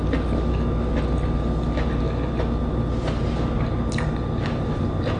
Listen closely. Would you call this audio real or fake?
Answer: real